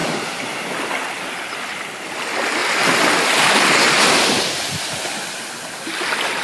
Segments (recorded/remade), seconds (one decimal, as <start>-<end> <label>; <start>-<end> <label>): 0.0-6.4 recorded